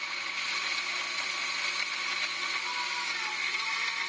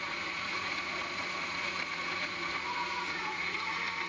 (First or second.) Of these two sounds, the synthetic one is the second